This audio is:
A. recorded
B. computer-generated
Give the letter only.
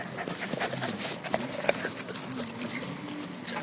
A